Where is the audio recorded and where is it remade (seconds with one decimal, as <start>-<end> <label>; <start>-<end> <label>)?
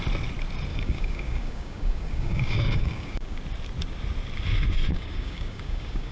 0.0-0.7 recorded; 0.7-3.4 remade; 3.4-4.9 recorded; 4.9-6.1 remade